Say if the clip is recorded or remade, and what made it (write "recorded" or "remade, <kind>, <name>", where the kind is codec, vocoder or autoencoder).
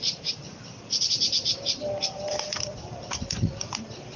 remade, vocoder, BigVGAN v2